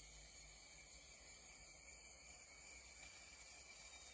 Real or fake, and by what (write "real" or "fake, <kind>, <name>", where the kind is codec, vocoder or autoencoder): real